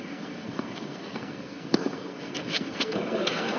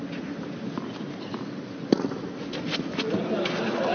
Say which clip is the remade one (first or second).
first